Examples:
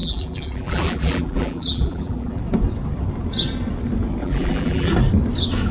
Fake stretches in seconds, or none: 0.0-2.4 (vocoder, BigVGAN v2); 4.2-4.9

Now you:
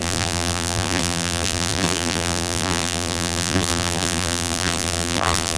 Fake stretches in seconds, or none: 0.0-5.6 (vocoder, BigVGAN v2)

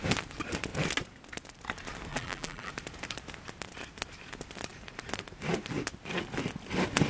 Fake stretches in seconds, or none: 2.1-2.7 (vocoder, BigVGAN v2)